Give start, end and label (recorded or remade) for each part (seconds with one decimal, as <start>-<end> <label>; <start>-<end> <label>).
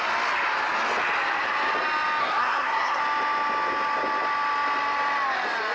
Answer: 0.0-2.2 recorded; 2.2-3.0 remade; 3.0-5.7 recorded